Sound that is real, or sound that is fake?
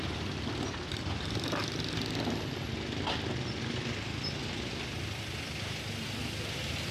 real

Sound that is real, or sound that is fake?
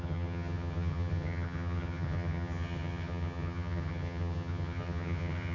fake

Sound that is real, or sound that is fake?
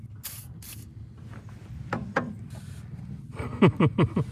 real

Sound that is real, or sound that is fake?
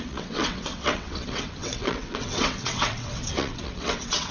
fake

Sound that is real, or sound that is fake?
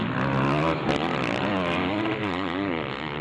real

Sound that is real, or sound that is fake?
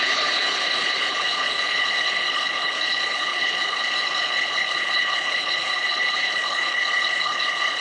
fake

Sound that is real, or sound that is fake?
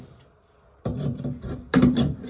fake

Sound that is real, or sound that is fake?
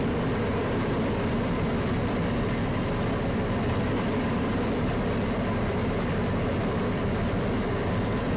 real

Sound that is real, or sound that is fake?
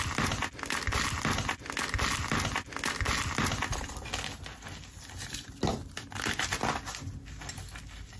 real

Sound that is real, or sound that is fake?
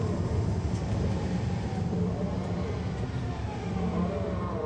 real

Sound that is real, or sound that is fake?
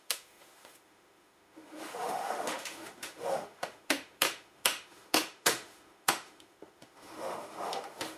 fake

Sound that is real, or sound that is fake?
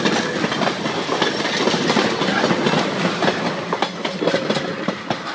real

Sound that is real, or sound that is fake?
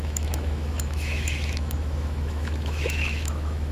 fake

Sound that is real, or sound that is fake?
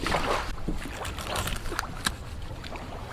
real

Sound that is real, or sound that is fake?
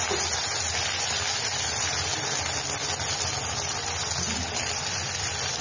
real